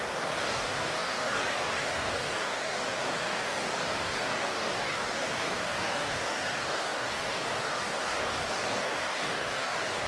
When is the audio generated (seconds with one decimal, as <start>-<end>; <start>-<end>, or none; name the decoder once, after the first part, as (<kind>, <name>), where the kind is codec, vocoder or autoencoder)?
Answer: 0.0-10.1 (codec, DAC)